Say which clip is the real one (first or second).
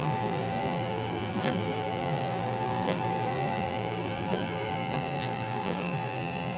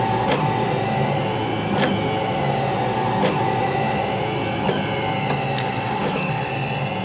second